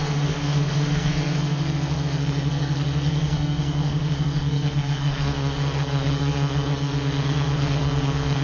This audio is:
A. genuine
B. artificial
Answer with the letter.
B